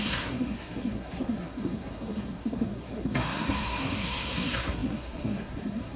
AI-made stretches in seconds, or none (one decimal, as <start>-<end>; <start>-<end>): 0.0-6.0